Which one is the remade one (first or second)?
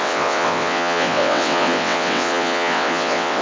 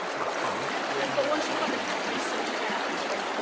first